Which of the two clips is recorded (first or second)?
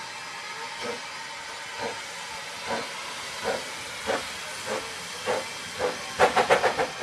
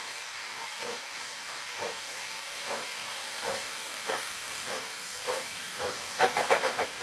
first